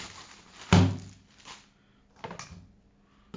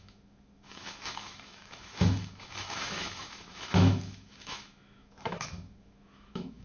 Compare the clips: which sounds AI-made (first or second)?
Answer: second